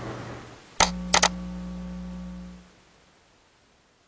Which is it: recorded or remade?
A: recorded